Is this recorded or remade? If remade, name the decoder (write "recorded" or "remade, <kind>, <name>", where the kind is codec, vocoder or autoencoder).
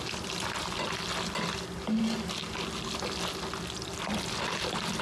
recorded